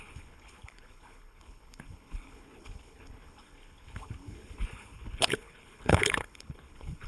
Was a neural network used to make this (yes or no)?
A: yes